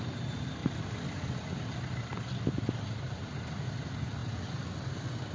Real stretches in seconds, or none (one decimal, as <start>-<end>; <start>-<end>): 0.0-0.6; 3.6-5.3